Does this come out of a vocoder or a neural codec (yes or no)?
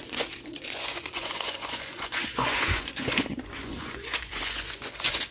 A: yes